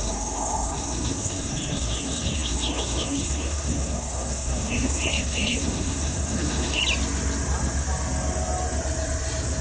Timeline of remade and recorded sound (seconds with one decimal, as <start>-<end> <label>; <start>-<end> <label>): 0.0-6.8 remade; 6.8-9.6 recorded